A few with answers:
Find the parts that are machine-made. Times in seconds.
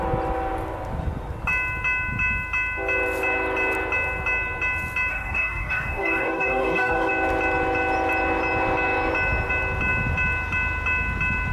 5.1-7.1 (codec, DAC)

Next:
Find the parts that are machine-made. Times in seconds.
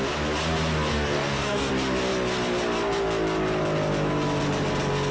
0.9-1.7 (codec, DAC)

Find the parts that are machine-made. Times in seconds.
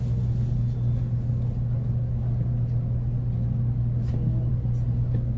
none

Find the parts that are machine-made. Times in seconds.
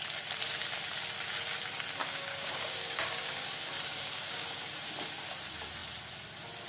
2.0-4.9 (codec, DAC)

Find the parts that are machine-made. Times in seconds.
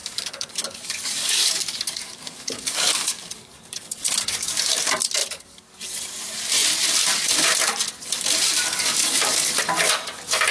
0.0-4.6 (codec, DAC); 5.2-5.8; 9.0-9.6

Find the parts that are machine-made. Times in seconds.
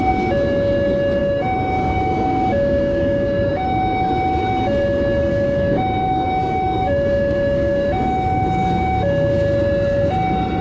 1.2-3.5 (codec, DAC); 5.3-7.9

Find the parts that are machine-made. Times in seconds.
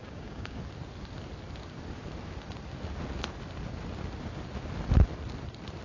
0.0-0.6 (codec, DAC)